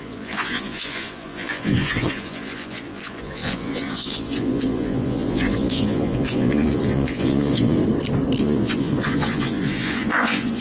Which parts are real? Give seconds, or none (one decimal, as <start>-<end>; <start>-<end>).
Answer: 7.8-8.4